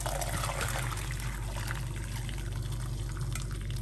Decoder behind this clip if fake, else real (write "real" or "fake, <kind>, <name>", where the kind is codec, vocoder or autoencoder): real